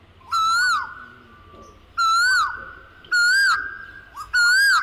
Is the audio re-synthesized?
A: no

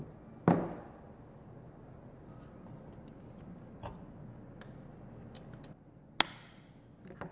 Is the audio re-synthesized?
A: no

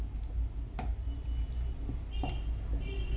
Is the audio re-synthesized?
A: no